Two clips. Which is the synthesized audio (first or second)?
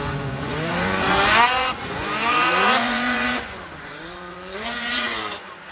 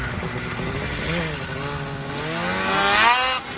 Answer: first